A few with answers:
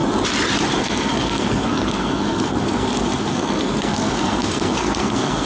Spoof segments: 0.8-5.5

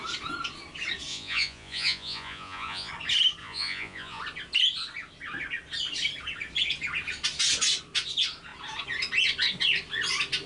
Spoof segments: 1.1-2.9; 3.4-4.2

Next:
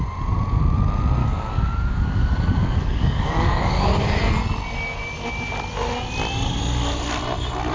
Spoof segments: 1.2-4.2

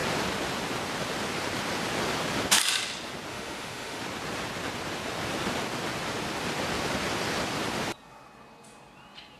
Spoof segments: 3.3-4.0

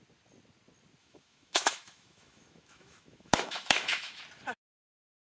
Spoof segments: 1.0-4.2